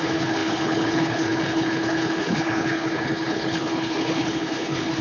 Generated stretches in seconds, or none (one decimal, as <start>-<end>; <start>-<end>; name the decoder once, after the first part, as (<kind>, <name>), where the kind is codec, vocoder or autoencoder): 0.0-5.0 (codec, HILCodec)